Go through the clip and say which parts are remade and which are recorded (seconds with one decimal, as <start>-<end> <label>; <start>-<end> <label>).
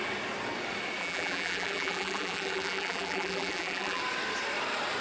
0.0-1.0 recorded; 1.0-4.0 remade; 4.0-5.0 recorded